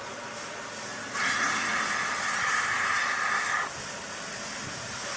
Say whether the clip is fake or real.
real